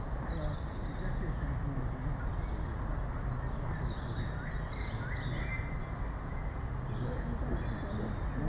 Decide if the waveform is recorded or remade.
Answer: recorded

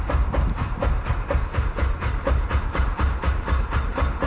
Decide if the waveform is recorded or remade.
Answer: remade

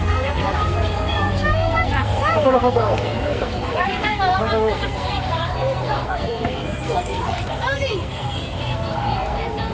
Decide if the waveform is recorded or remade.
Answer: remade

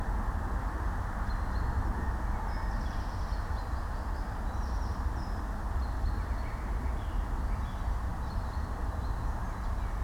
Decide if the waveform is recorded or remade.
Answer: recorded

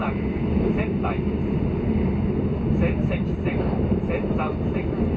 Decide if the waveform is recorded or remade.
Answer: recorded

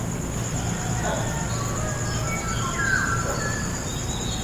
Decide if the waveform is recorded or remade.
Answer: recorded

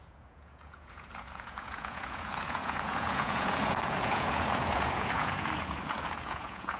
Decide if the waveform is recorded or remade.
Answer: remade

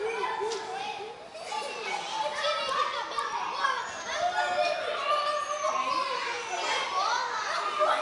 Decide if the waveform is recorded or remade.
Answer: recorded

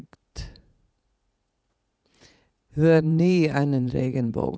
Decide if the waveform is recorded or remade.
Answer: remade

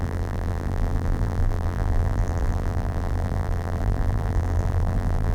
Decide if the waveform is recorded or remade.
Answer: remade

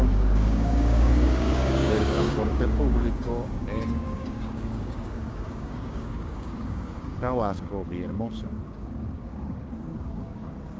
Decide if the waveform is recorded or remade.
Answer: remade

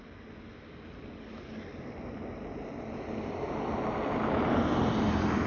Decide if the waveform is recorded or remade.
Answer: recorded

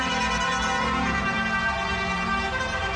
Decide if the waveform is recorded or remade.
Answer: remade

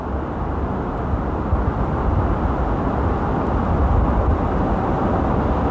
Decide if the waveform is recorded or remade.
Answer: recorded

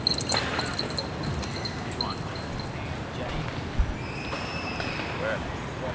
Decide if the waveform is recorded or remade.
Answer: recorded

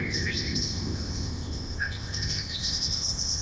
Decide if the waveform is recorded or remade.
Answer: remade